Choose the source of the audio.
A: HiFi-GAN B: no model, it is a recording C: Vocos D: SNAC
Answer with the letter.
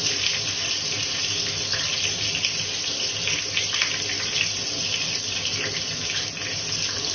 B